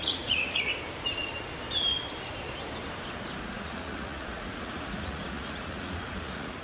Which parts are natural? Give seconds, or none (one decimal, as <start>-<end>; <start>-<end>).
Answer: 0.7-3.4